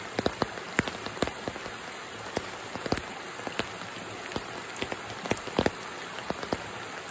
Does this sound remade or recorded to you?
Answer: recorded